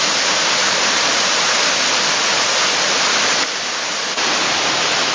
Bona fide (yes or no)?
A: no